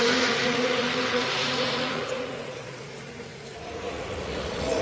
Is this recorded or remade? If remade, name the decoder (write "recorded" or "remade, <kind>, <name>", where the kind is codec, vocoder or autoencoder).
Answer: remade, vocoder, Vocos